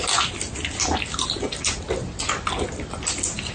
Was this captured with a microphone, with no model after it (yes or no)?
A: yes